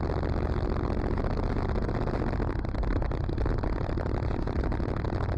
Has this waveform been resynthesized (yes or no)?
no